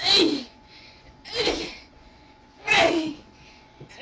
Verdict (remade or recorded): remade